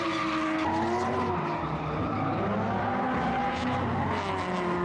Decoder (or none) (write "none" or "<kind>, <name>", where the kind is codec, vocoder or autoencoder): none